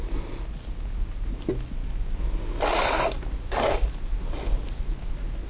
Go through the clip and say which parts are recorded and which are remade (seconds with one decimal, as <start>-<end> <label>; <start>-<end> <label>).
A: 0.0-5.5 recorded